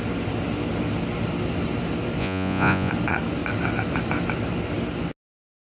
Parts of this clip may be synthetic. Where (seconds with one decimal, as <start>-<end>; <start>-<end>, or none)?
2.2-2.9